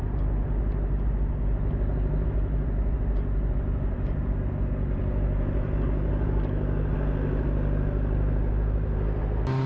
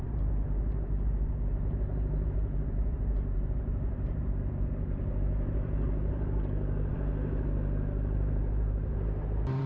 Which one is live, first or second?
first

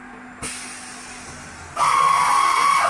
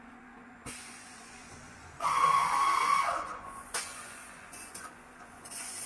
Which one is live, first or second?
first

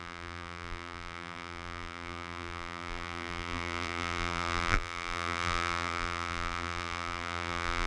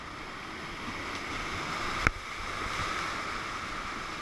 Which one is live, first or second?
second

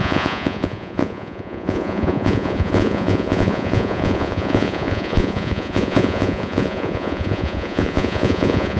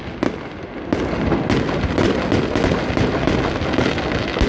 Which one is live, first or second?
second